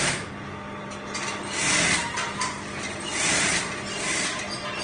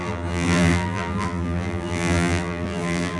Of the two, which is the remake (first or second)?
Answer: second